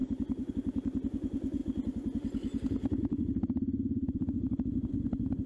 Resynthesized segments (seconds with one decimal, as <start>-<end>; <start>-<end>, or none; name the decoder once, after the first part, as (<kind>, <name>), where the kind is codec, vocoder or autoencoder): none